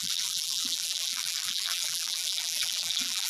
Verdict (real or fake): fake